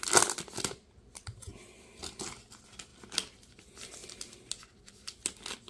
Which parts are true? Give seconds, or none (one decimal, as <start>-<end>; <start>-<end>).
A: 0.0-5.7